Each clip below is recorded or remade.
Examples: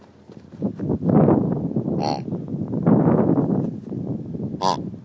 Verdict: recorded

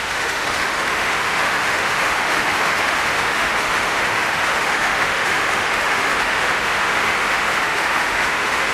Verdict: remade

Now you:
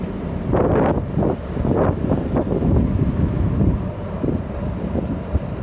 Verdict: recorded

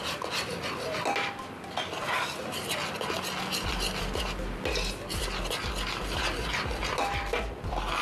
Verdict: recorded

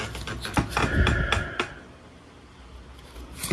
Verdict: recorded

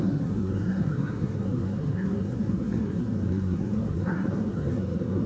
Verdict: remade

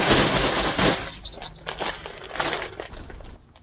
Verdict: recorded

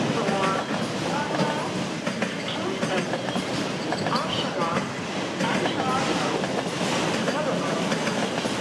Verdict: recorded